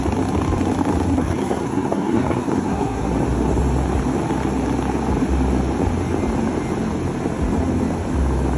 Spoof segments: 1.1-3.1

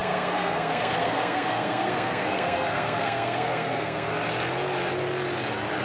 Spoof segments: 0.0-4.1

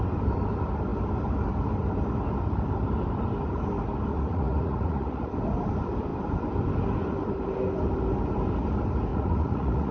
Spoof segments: 4.1-5.3; 9.1-9.9

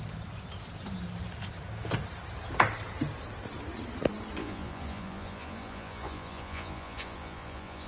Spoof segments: 4.4-7.9

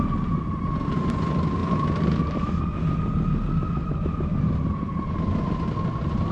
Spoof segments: none